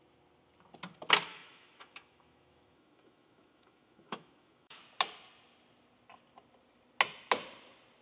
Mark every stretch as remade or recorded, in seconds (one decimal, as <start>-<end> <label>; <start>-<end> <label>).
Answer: 0.0-1.3 recorded; 1.3-4.8 remade; 4.8-8.0 recorded